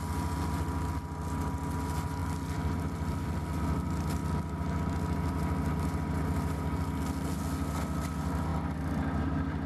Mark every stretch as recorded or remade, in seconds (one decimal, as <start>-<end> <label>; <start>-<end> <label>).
0.0-2.2 recorded; 2.2-3.4 remade; 3.4-9.7 recorded